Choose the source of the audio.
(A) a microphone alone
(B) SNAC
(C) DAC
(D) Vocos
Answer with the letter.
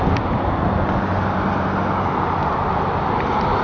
A